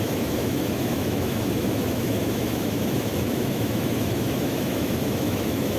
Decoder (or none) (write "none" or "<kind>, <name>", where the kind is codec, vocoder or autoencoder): autoencoder, DAC-VAE